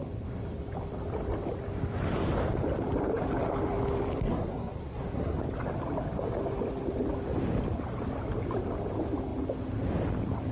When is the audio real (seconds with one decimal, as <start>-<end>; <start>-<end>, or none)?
0.0-4.3; 5.4-10.5